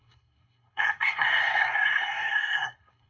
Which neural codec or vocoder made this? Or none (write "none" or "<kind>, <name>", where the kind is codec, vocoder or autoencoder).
codec, SNAC